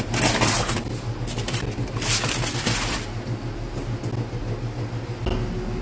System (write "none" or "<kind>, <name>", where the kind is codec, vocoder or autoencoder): none